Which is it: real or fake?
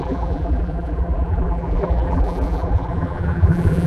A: fake